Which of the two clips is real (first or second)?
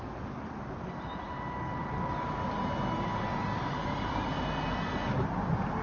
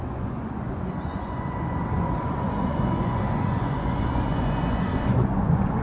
first